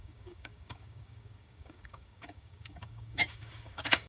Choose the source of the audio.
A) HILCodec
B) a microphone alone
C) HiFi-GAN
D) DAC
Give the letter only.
D